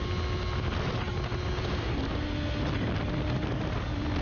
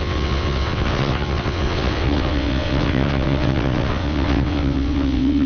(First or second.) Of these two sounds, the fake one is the second